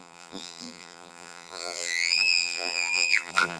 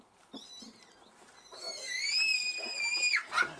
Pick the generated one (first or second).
first